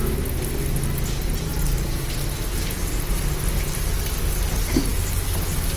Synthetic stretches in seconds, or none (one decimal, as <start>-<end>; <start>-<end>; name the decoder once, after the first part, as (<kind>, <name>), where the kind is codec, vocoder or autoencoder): 1.5-2.1 (vocoder, BigVGAN v2)